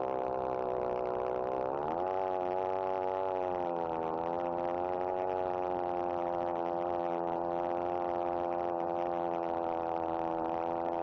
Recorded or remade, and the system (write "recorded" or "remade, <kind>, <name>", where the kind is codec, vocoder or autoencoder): recorded